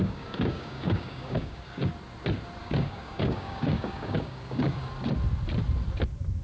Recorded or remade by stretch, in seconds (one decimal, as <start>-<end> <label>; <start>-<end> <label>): 0.0-1.9 remade; 1.9-2.6 recorded; 2.6-4.9 remade; 4.9-6.4 recorded